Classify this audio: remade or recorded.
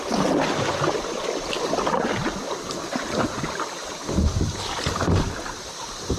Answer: recorded